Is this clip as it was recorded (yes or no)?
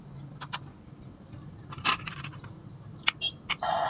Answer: yes